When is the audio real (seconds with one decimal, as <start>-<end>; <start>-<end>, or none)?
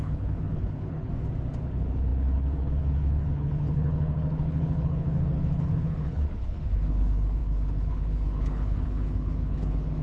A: 1.1-1.6